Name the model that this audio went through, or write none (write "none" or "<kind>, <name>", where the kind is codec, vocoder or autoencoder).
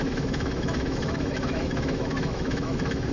autoencoder, DAC-VAE